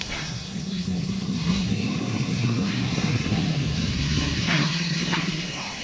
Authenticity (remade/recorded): remade